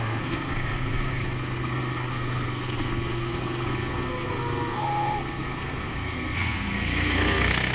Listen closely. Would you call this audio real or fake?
fake